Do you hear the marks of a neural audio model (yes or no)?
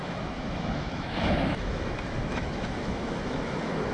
yes